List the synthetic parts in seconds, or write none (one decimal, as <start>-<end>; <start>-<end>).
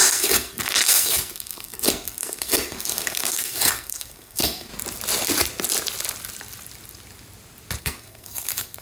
0.0-4.7; 7.8-8.8